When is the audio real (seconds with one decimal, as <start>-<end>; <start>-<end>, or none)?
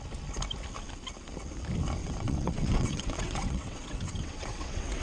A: 0.0-2.0